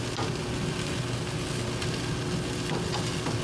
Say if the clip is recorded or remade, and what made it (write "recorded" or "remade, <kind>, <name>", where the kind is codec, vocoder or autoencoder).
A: recorded